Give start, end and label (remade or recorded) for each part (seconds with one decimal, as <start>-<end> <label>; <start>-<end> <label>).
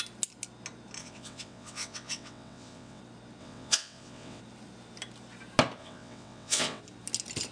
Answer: 0.0-1.0 recorded; 1.0-3.0 remade; 3.0-3.4 recorded; 3.4-4.4 remade; 4.4-5.8 recorded; 5.8-6.8 remade; 6.8-7.5 recorded